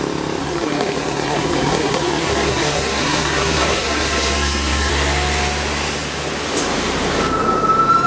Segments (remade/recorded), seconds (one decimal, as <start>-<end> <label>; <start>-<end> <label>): 0.0-0.4 recorded; 0.4-4.9 remade; 4.9-8.1 recorded